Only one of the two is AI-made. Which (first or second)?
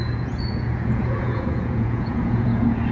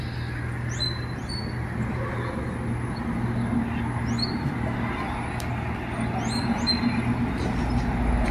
first